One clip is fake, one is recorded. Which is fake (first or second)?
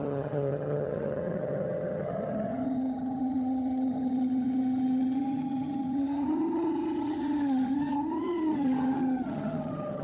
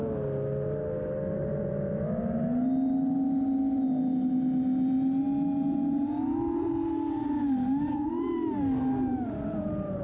first